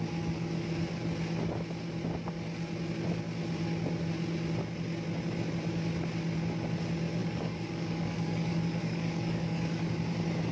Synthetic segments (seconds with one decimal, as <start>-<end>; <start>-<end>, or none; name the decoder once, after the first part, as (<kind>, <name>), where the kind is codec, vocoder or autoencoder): 7.2-9.9 (codec, DAC)

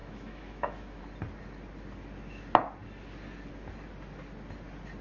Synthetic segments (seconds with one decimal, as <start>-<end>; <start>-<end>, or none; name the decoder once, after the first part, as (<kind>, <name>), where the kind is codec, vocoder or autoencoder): 0.0-1.0 (autoencoder, DAC-VAE)

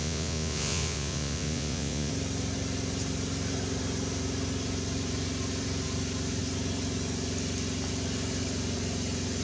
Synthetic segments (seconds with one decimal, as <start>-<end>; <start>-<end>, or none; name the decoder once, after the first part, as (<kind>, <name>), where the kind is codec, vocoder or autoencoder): 0.0-2.1 (vocoder, Vocos)

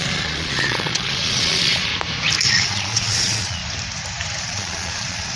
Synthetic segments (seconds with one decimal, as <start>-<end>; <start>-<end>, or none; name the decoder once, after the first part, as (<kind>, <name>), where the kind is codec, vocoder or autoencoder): 0.0-1.9 (vocoder, Vocos); 2.5-3.6; 4.4-5.4

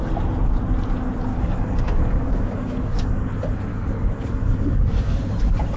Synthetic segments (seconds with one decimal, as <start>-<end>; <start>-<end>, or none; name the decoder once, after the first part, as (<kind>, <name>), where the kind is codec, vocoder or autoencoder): 1.3-3.3 (codec, DAC); 3.7-5.2

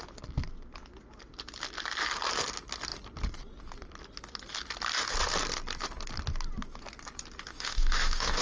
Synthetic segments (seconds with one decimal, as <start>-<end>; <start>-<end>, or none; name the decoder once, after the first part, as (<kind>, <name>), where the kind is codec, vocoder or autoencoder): 7.5-8.4 (autoencoder, DAC-VAE)

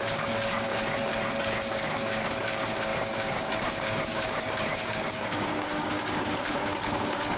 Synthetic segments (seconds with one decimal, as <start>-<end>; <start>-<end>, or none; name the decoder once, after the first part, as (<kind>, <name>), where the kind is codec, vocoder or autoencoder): 0.0-0.7 (codec, DAC); 1.4-7.4